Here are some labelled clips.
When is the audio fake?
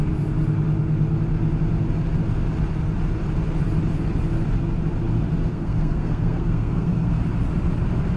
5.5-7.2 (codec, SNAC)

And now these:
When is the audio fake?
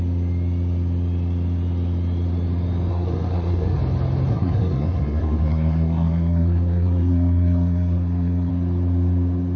2.9-3.8 (codec, SNAC); 4.3-8.5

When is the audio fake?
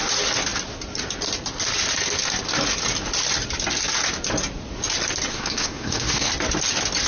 5.3-6.3 (codec, SNAC)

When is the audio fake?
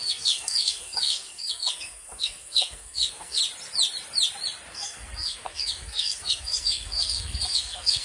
0.0-3.4 (codec, SNAC); 4.7-8.0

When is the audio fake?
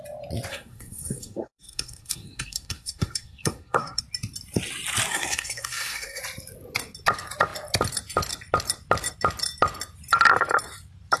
0.5-4.0 (codec, SNAC); 5.1-6.2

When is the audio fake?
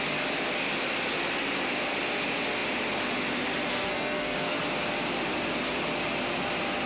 3.7-4.6 (codec, SNAC)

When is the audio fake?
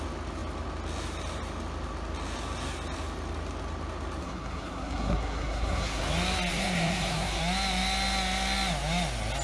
4.2-6.0 (codec, SNAC); 6.5-7.4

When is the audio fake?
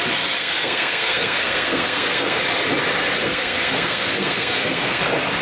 0.4-2.4 (codec, SNAC); 3.2-5.0